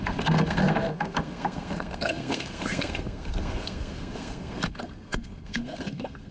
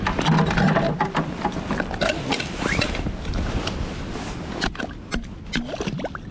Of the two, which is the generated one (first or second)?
first